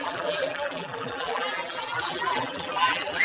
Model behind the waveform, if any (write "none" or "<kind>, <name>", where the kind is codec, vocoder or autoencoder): vocoder, BigVGAN v2